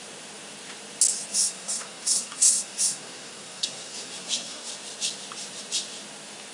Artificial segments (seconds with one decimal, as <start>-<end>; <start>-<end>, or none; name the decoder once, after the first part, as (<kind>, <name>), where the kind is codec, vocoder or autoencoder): 1.3-4.7 (codec, SNAC)